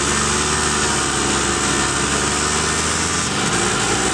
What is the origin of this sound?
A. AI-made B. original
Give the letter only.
B